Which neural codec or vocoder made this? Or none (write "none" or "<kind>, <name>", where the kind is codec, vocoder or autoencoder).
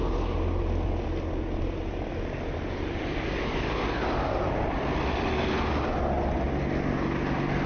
none